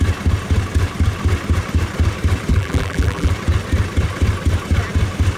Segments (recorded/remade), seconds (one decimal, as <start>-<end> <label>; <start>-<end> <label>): 0.0-2.5 recorded; 2.5-3.3 remade; 3.3-5.4 recorded